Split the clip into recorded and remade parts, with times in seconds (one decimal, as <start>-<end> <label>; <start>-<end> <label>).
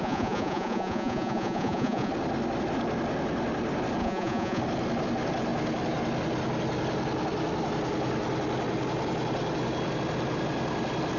0.0-2.1 remade; 2.1-4.0 recorded; 4.0-4.6 remade; 4.6-11.2 recorded